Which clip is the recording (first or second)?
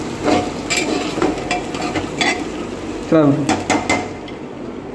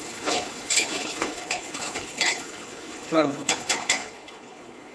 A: first